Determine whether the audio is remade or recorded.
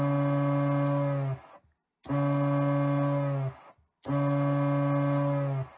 recorded